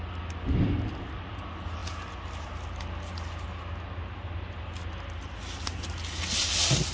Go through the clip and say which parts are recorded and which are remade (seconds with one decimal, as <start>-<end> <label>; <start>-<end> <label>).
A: 0.0-6.9 recorded